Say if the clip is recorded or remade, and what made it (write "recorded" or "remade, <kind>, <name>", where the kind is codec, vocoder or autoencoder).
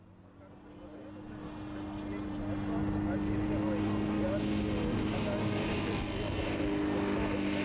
recorded